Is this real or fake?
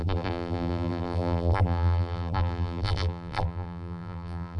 fake